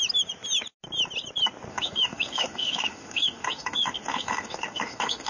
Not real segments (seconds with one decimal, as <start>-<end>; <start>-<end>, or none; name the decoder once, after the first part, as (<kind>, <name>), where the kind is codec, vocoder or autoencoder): 1.7-5.3 (autoencoder, DAC-VAE)